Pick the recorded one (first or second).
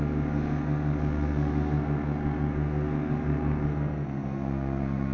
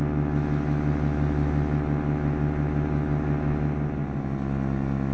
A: second